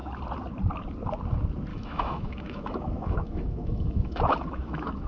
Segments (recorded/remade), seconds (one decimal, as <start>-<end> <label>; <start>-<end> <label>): 0.0-1.7 recorded; 1.7-5.1 remade